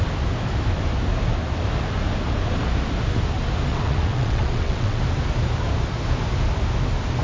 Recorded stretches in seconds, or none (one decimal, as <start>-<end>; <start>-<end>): 0.0-3.7; 5.0-7.2